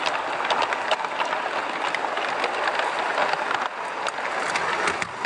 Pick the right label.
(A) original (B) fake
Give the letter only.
A